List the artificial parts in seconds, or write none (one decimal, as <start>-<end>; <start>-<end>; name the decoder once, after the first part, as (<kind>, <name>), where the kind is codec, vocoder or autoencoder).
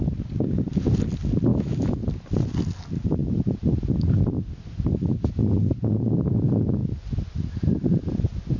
1.5-2.0 (autoencoder, DAC-VAE)